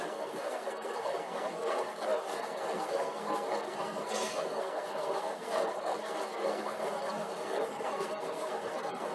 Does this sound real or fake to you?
fake